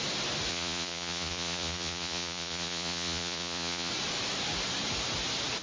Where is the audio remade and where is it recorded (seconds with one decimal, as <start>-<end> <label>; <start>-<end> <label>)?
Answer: 0.0-0.5 recorded; 0.5-3.9 remade; 3.9-5.6 recorded